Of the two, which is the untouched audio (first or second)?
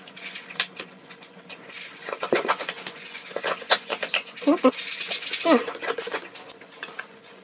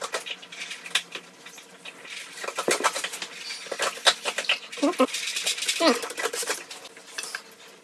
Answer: second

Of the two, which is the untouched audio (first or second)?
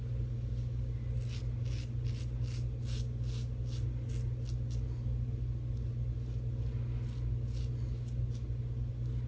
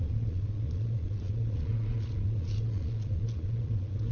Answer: first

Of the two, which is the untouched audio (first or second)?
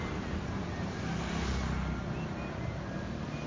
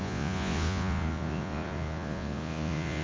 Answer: first